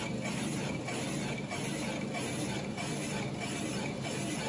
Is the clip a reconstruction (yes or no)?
no